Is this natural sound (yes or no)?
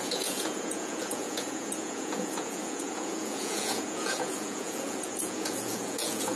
no